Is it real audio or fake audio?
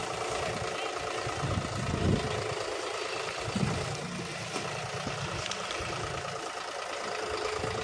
real